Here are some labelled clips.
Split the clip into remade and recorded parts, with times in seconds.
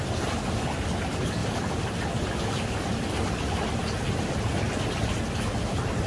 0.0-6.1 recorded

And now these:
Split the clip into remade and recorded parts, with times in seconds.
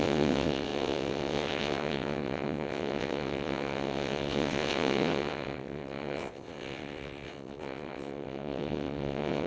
0.0-9.5 remade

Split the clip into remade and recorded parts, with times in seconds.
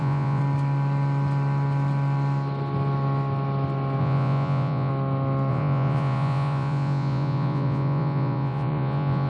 0.0-0.4 remade; 0.4-4.0 recorded; 4.0-4.9 remade; 4.9-5.5 recorded; 5.5-9.3 remade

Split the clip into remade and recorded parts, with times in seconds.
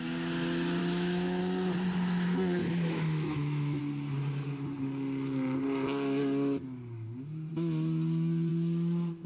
0.0-0.8 recorded; 0.8-1.4 remade; 1.4-2.6 recorded; 2.6-3.8 remade; 3.8-9.3 recorded